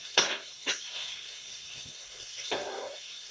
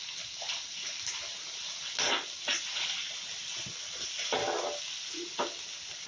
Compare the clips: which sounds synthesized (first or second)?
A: first